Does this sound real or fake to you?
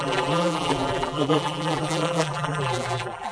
fake